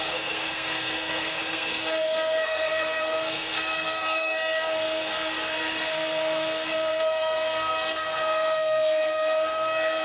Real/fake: fake